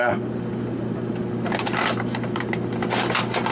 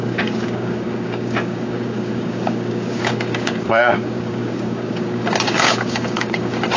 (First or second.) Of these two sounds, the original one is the first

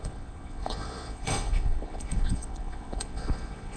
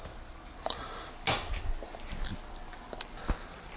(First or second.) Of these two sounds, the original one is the second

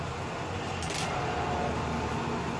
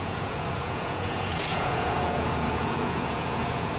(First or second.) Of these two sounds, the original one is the first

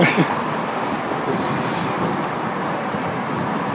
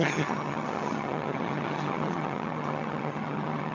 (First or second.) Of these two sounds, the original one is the first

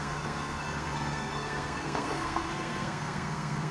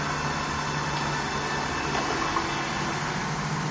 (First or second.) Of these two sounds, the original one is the second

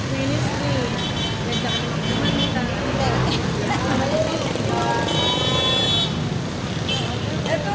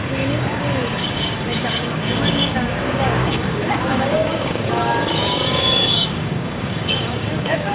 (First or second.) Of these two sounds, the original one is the first